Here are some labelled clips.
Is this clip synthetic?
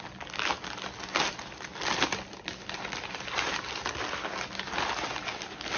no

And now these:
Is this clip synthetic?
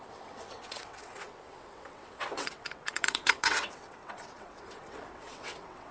yes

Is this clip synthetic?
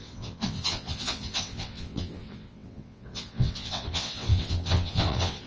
yes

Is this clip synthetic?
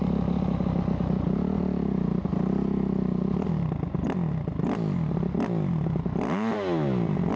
no